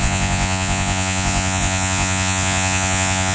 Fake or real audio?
fake